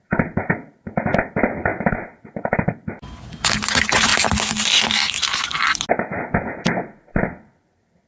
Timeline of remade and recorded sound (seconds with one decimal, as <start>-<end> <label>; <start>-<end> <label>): 0.0-8.1 recorded